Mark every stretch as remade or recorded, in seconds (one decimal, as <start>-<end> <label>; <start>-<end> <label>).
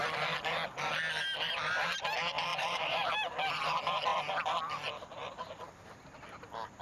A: 0.0-2.5 recorded; 2.5-3.1 remade; 3.1-6.8 recorded